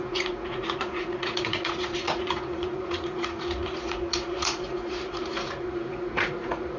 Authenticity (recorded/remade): remade